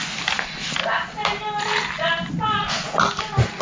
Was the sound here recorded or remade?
recorded